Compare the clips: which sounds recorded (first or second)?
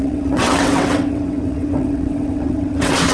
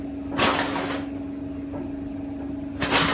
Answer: second